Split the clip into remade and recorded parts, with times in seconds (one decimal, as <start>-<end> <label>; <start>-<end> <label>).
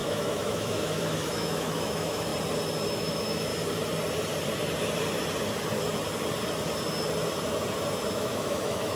0.0-2.3 remade; 2.3-2.9 recorded; 2.9-3.5 remade; 3.5-8.1 recorded; 8.1-9.0 remade